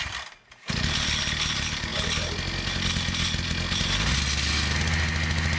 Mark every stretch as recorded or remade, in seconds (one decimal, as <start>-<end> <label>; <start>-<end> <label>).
0.0-5.6 recorded

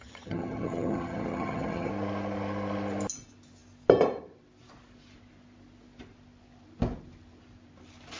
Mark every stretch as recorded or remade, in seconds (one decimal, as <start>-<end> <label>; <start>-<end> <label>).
0.0-1.9 remade; 1.9-8.2 recorded